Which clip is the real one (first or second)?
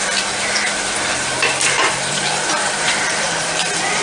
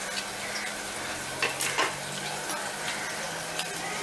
second